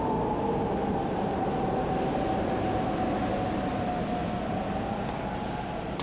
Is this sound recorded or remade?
recorded